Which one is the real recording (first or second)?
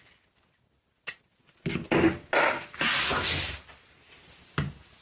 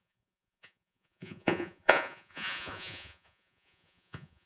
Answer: first